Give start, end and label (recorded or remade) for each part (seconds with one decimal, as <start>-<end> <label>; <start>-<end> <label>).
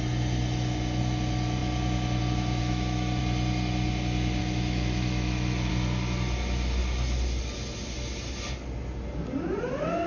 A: 0.0-2.6 recorded; 2.6-3.2 remade; 3.2-4.4 recorded; 4.4-5.7 remade; 5.7-10.1 recorded